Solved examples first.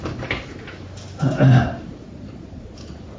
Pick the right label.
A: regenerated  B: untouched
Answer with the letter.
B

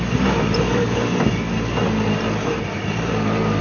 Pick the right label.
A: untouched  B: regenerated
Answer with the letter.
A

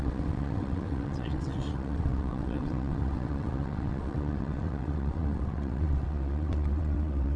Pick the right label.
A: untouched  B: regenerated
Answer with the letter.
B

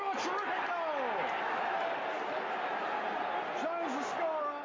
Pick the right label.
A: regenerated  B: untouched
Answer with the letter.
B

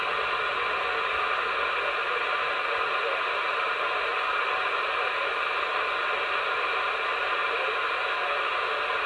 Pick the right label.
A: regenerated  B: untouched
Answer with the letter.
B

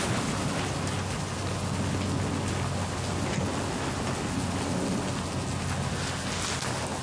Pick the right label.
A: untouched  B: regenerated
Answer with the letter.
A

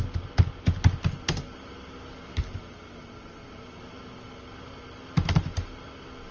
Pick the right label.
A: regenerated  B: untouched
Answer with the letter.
B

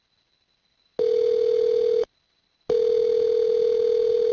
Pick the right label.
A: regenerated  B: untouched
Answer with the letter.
B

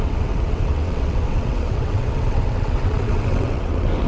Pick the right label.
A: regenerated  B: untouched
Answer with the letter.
A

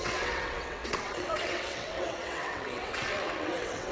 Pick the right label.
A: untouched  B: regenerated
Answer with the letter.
B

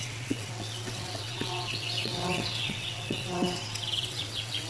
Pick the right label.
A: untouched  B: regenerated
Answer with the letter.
B